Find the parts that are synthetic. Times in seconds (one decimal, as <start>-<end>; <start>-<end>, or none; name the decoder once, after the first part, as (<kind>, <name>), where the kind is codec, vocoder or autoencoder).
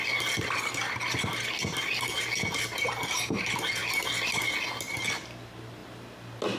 none